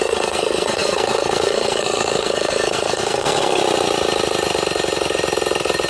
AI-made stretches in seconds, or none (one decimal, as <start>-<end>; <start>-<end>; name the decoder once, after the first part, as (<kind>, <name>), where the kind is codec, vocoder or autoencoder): 0.0-3.6 (codec, SNAC)